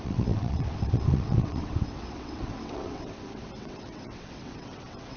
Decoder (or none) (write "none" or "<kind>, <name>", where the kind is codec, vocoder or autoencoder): vocoder, WaveNeXt